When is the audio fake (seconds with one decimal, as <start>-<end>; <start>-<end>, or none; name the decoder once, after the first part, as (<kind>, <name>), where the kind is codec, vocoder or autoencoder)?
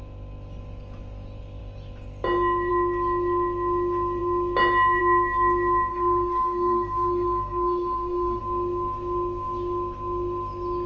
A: 5.9-8.4 (codec, SNAC)